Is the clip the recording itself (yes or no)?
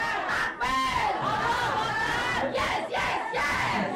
no